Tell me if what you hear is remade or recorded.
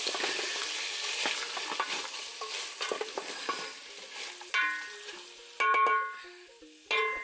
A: recorded